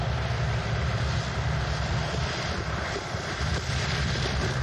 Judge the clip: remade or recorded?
remade